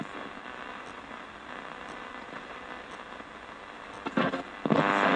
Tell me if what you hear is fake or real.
real